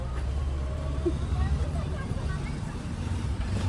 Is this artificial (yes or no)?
yes